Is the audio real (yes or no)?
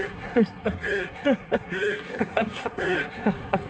no